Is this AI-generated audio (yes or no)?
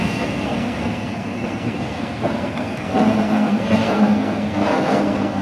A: yes